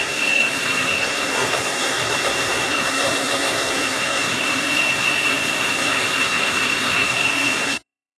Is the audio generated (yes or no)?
yes